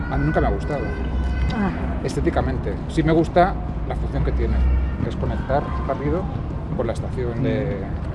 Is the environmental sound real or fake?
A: real